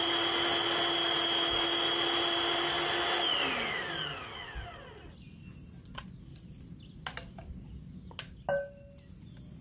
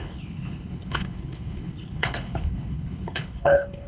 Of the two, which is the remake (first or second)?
second